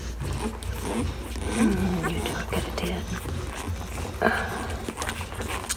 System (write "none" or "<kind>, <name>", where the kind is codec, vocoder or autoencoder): none